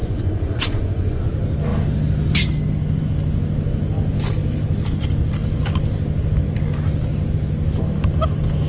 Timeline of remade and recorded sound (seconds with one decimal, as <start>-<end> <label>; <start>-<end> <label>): 0.0-1.2 remade; 1.2-8.7 recorded